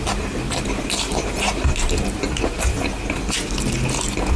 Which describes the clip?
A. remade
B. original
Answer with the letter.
B